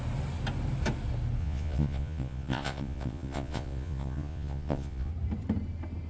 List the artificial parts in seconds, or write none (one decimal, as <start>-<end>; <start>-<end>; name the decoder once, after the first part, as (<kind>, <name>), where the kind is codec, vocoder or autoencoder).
1.4-5.1 (vocoder, Vocos)